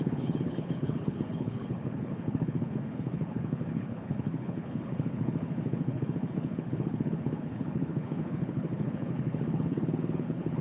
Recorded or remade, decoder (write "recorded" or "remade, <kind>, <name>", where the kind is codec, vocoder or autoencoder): remade, codec, HILCodec